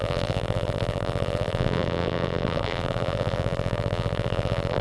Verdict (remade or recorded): remade